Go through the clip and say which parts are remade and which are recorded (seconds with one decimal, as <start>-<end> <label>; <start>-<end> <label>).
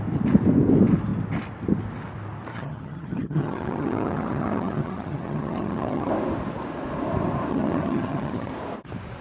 0.0-2.5 recorded; 2.5-6.1 remade; 6.1-7.5 recorded; 7.5-8.5 remade; 8.5-9.2 recorded